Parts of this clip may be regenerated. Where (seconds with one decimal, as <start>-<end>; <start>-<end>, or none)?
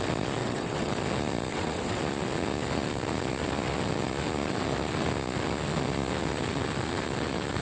0.4-0.9; 1.5-2.0